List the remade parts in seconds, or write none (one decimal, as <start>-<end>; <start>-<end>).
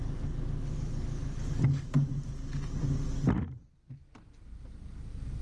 0.0-2.1